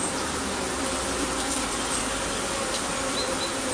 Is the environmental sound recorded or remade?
recorded